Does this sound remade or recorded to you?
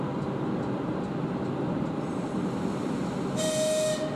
recorded